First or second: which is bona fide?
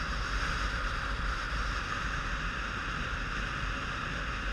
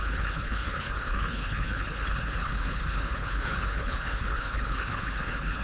first